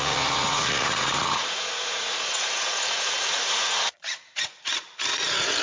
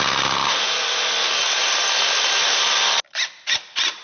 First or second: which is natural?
second